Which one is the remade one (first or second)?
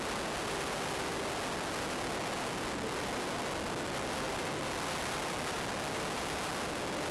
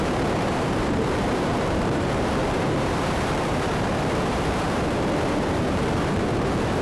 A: second